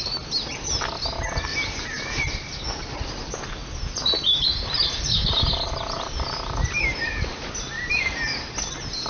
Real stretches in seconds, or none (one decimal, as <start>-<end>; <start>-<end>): 0.0-1.5; 2.2-3.6; 7.9-9.1